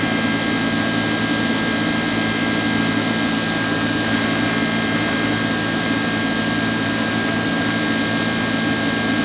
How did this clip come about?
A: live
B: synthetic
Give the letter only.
A